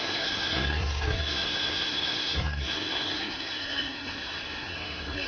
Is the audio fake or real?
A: fake